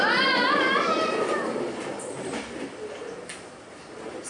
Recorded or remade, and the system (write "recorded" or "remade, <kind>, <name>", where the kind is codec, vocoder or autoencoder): recorded